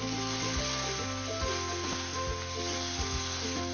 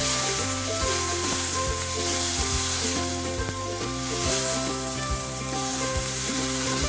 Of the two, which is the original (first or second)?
first